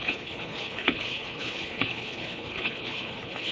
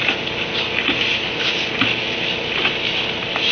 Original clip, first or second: second